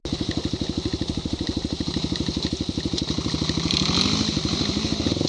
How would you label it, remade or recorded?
recorded